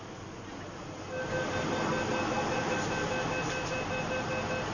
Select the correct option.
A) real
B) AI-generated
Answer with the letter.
A